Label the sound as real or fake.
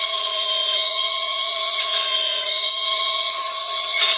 fake